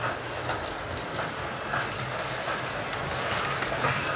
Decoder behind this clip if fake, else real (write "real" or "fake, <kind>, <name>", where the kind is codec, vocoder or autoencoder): real